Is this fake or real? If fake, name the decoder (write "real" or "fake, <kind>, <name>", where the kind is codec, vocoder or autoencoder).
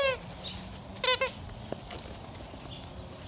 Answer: real